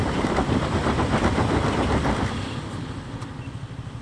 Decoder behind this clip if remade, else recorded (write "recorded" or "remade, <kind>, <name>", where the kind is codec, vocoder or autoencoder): remade, vocoder, BigVGAN v2